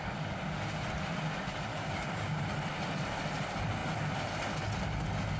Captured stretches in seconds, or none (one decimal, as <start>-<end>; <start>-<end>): 0.0-1.7; 2.4-5.4